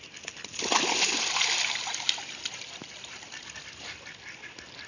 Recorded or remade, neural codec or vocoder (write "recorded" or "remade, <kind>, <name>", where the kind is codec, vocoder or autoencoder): recorded